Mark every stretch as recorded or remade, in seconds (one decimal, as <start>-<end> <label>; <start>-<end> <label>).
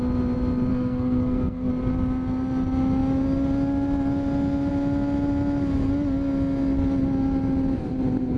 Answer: 0.0-0.7 recorded; 0.7-1.7 remade; 1.7-8.4 recorded